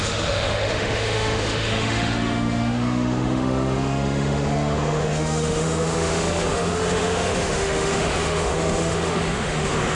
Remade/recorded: remade